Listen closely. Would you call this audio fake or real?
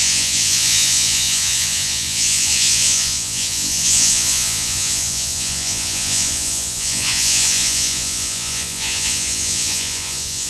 fake